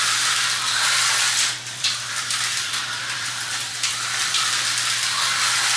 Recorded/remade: remade